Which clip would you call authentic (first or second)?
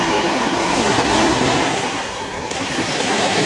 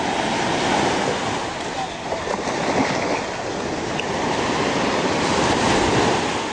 second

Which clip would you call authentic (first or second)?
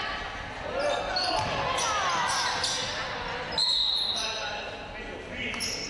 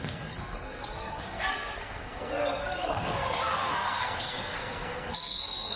first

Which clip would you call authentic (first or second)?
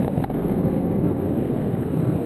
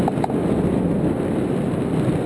second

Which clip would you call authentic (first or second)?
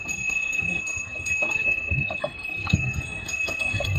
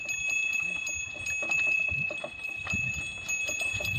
second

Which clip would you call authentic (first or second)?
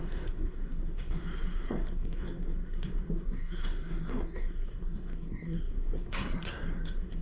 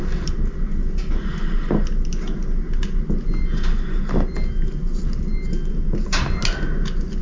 second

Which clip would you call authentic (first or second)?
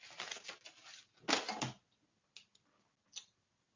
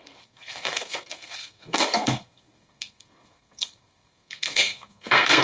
first